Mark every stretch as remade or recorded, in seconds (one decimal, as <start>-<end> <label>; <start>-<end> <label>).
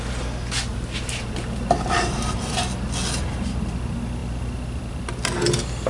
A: 0.0-0.7 recorded; 0.7-2.4 remade; 2.4-5.9 recorded